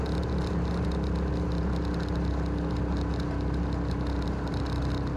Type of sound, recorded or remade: recorded